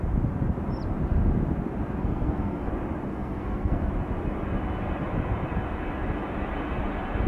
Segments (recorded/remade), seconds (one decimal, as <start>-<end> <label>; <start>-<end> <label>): 0.0-2.0 recorded; 2.0-2.7 remade; 2.7-3.1 recorded; 3.1-3.9 remade; 3.9-7.3 recorded